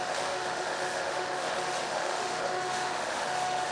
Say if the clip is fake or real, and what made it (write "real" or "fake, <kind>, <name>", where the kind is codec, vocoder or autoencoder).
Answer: fake, autoencoder, DAC-VAE